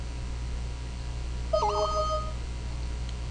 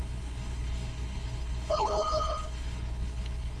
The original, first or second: first